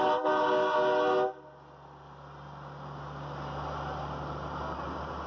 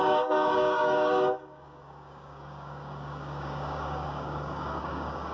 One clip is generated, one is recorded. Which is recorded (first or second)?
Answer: first